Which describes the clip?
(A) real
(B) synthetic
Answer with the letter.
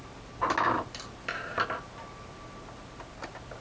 A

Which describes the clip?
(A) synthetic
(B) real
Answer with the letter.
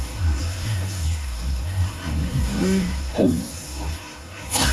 A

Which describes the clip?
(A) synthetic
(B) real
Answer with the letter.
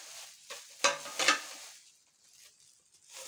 B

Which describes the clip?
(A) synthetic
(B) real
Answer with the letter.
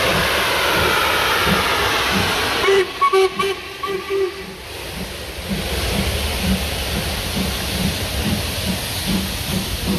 B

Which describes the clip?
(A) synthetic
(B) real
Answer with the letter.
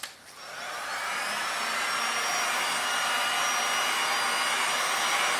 B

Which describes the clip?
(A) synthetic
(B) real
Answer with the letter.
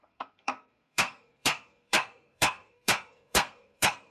A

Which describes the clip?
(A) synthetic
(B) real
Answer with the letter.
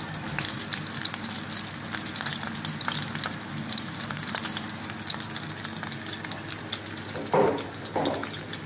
B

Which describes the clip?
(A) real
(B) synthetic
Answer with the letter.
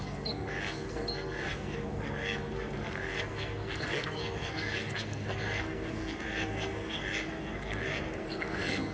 B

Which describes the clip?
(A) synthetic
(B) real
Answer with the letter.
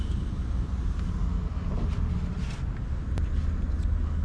B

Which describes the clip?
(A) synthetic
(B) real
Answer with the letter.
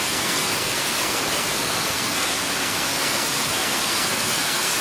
A